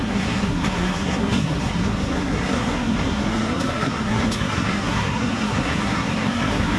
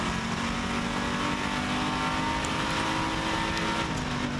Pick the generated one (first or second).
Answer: first